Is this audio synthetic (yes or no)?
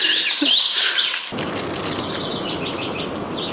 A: no